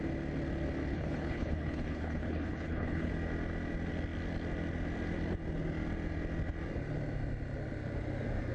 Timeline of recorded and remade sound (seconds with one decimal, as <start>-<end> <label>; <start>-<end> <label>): 0.0-0.9 recorded; 0.9-3.1 remade; 3.1-8.5 recorded